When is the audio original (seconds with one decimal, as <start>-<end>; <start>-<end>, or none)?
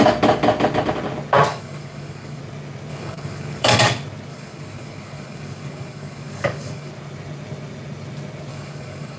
0.0-1.5; 2.4-2.9; 3.8-4.3; 6.9-8.5